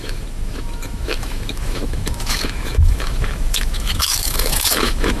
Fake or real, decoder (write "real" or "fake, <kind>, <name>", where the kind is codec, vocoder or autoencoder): fake, autoencoder, DAC-VAE